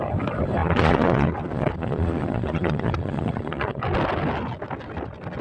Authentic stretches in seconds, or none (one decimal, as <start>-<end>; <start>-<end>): 0.0-0.6; 3.8-5.4